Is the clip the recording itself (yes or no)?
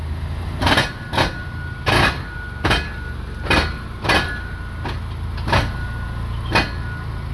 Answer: yes